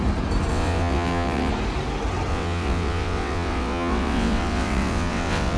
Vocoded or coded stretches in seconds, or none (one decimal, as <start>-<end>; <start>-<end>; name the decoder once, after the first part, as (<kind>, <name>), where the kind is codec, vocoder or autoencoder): 0.5-1.5 (vocoder, WaveNeXt); 2.3-5.6